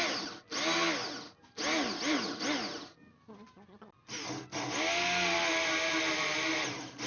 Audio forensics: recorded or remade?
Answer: recorded